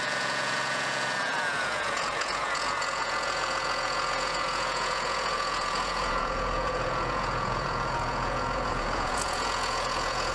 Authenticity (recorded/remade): remade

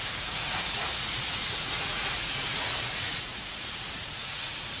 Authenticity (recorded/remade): remade